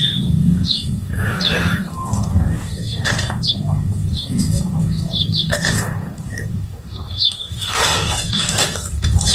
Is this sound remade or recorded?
remade